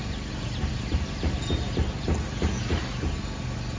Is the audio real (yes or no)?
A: yes